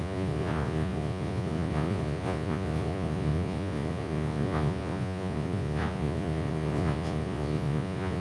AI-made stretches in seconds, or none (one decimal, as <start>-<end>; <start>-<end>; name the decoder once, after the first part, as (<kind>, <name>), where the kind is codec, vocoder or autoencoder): 0.0-8.2 (vocoder, Vocos)